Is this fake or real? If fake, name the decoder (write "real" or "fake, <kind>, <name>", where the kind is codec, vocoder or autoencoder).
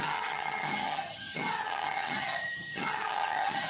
fake, vocoder, HiFi-GAN